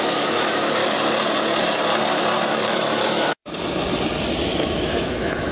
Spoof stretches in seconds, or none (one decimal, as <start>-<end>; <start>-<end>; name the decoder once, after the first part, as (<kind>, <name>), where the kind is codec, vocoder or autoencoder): 0.0-0.8 (autoencoder, DAC-VAE); 2.5-3.4; 4.6-5.5